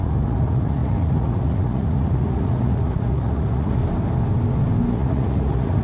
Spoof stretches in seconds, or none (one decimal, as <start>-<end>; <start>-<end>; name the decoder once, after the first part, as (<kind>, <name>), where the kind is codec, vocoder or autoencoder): 0.0-3.8 (vocoder, Vocos); 4.9-5.8